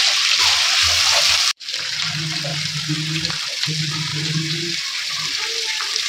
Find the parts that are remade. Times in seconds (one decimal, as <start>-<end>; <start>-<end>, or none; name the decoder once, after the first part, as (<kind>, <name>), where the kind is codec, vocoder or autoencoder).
0.0-2.5 (vocoder, BigVGAN v2); 3.3-4.1; 5.1-6.1